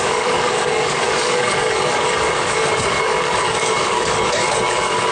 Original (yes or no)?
no